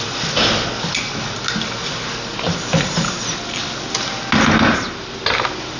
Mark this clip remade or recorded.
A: recorded